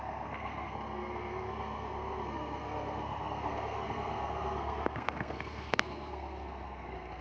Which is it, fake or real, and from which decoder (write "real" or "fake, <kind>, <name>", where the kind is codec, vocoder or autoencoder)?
fake, codec, SNAC